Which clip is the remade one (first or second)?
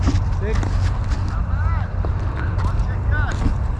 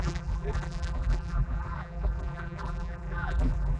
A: second